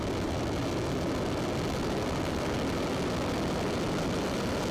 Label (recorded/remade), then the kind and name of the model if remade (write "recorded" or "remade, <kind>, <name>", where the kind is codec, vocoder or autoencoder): recorded